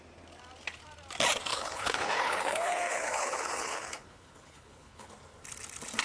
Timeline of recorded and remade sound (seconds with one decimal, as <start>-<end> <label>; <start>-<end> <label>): 0.0-1.5 recorded; 1.5-5.1 remade; 5.1-6.0 recorded